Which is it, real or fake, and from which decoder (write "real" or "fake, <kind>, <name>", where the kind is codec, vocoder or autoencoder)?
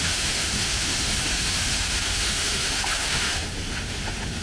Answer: fake, autoencoder, DAC-VAE